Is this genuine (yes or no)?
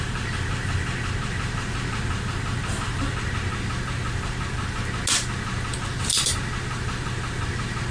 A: yes